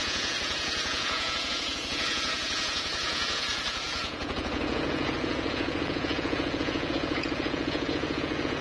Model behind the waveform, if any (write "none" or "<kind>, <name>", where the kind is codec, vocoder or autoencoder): vocoder, Vocos